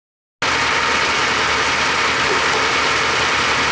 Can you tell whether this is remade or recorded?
recorded